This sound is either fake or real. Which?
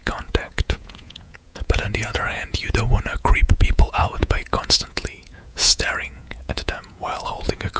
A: fake